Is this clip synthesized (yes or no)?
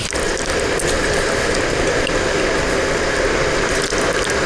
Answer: no